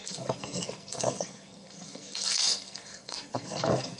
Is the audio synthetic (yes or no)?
yes